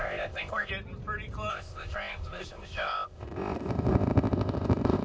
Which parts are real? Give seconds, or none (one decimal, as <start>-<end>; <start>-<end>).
0.7-1.5